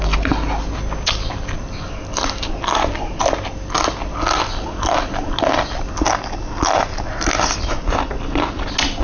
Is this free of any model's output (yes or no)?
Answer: yes